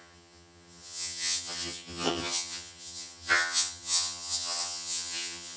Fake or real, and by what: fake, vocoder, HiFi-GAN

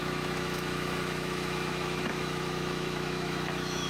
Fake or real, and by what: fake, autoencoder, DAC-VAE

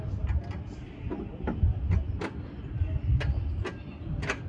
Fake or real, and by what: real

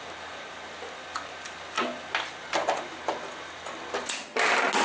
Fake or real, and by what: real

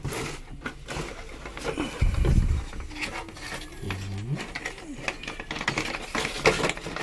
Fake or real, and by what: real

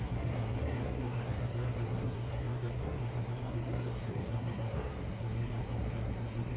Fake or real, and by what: fake, codec, SNAC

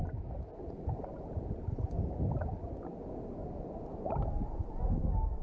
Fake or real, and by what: real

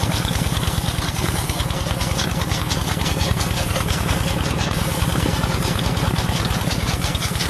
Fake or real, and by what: fake, codec, SNAC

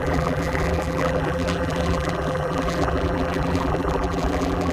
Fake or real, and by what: fake, vocoder, BigVGAN v2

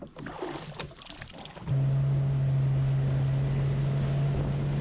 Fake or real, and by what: real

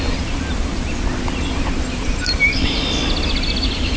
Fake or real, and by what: real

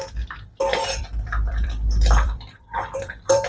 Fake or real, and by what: fake, vocoder, BigVGAN v2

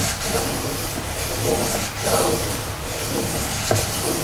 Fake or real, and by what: real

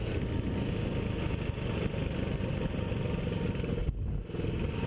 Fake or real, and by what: real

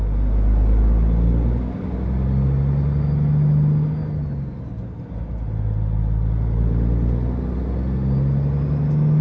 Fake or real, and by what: real